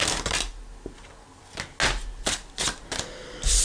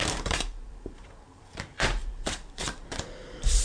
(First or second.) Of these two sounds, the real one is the first